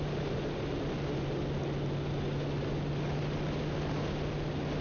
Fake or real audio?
real